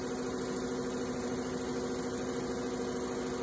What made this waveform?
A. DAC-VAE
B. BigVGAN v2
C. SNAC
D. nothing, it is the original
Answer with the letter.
D